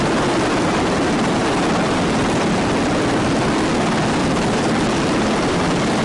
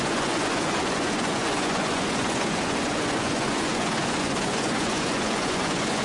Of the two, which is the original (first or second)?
first